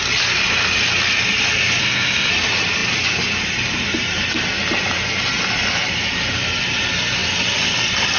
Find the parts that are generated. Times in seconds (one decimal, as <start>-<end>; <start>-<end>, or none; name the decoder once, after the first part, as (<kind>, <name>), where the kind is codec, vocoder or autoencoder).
1.8-2.3 (codec, SNAC)